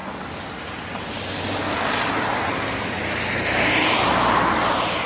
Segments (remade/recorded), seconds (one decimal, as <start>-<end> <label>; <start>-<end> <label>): 0.0-5.1 recorded